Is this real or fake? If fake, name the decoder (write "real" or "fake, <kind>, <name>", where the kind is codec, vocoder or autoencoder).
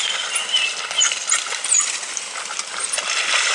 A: real